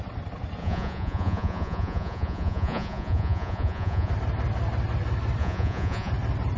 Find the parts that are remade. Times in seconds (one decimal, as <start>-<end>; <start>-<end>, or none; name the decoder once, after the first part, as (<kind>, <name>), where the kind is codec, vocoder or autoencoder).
0.6-4.1 (vocoder, Vocos); 5.4-6.1